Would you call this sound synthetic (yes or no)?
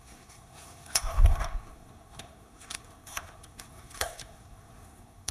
yes